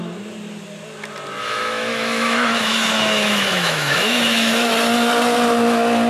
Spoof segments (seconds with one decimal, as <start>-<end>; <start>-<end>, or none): 1.4-4.7